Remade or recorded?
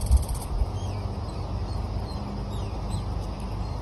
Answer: recorded